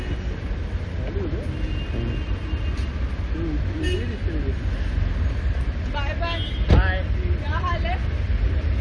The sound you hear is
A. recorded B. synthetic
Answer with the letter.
A